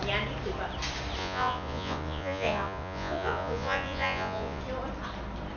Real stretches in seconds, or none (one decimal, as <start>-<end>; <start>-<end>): 0.0-1.2; 4.6-5.6